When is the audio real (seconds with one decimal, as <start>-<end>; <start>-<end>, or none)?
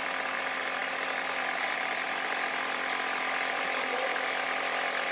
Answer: 0.0-5.1